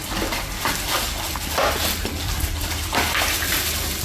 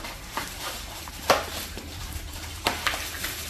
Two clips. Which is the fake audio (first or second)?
second